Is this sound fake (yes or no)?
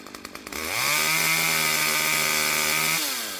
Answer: no